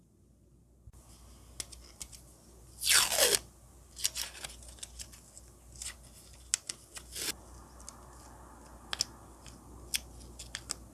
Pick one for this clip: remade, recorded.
recorded